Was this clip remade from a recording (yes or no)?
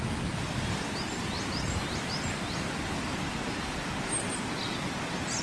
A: no